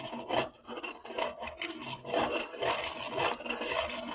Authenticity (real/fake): real